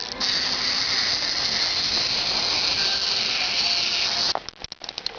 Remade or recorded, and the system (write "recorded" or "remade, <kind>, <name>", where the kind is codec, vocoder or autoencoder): recorded